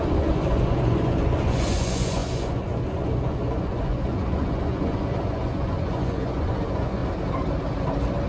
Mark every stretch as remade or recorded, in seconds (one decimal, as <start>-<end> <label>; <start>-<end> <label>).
0.0-7.0 remade; 7.0-8.3 recorded

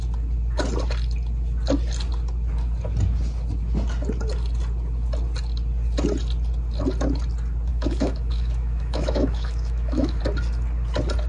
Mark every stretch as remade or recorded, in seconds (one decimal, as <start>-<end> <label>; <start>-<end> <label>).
0.0-7.7 recorded; 7.7-10.2 remade; 10.2-11.3 recorded

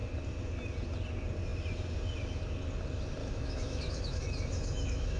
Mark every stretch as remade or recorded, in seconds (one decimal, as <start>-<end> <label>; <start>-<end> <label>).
0.0-3.2 recorded; 3.2-5.2 remade

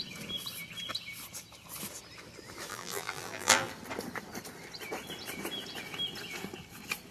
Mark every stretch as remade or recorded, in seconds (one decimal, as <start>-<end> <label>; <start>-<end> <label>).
0.0-2.7 recorded; 2.7-3.7 remade; 3.7-7.1 recorded

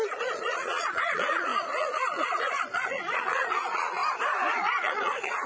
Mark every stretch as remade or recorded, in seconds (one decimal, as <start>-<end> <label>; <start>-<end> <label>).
0.0-4.0 remade; 4.0-4.5 recorded; 4.5-5.5 remade